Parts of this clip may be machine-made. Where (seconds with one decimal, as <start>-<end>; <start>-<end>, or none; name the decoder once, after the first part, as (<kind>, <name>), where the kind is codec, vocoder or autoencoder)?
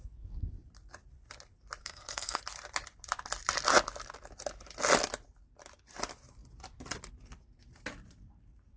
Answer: 1.8-2.4 (codec, SNAC)